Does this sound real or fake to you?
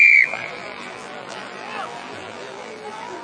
fake